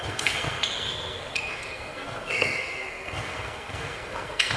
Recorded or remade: remade